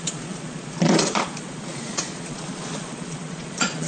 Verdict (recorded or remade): remade